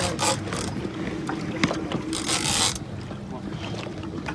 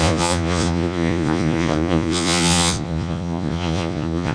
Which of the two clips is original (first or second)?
first